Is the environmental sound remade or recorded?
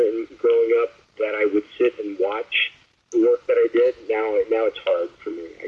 recorded